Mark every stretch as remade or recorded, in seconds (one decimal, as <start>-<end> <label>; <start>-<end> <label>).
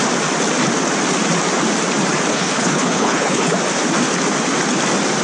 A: 0.0-2.3 recorded; 2.3-3.5 remade; 3.5-5.2 recorded